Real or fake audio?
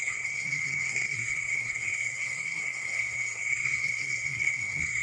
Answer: fake